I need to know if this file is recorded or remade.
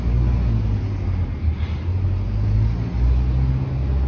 recorded